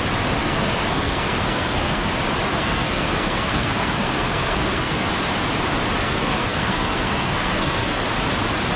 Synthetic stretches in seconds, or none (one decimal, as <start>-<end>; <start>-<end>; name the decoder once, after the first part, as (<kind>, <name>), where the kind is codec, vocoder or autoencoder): 0.4-2.1 (codec, SNAC); 2.5-5.1; 6.0-8.0